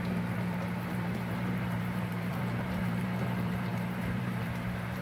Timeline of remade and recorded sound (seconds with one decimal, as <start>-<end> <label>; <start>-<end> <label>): 0.0-5.0 remade